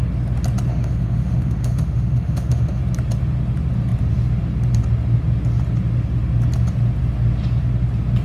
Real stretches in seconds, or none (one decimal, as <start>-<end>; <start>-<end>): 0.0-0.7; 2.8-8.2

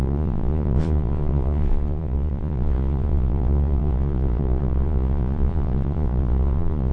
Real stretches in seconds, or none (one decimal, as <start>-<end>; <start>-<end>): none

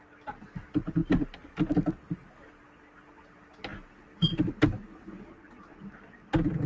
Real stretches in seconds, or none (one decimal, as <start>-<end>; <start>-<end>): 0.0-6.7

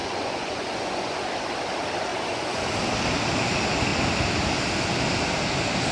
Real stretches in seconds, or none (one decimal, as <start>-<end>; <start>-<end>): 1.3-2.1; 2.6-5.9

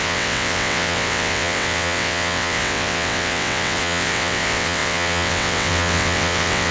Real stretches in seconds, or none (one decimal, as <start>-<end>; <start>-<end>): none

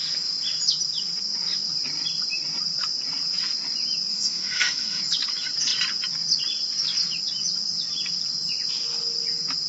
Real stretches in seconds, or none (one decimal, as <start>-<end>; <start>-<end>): 0.0-4.1; 5.0-9.7

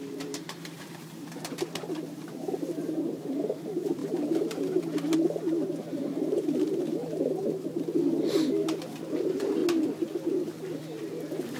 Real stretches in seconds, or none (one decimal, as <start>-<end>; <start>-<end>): 9.6-10.8